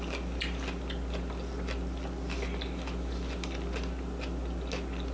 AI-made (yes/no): no